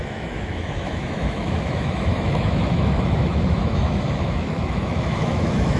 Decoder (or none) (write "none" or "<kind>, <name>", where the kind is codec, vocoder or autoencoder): autoencoder, DAC-VAE